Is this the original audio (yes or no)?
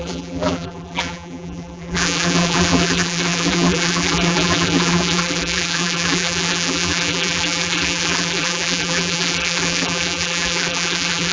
no